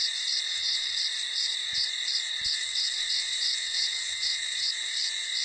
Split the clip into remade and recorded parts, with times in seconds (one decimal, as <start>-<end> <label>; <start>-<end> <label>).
0.0-0.5 recorded; 0.5-1.0 remade; 1.0-2.6 recorded; 2.6-4.7 remade; 4.7-5.4 recorded